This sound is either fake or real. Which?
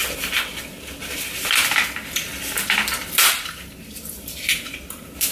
real